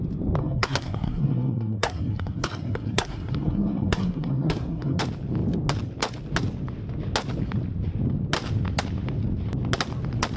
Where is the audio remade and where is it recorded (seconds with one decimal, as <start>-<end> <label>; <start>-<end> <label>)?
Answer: 0.0-0.4 recorded; 0.4-5.0 remade; 5.0-10.4 recorded